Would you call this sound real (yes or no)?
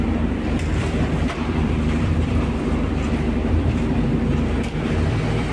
no